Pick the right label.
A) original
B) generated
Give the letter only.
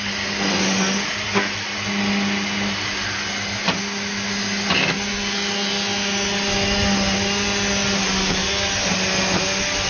A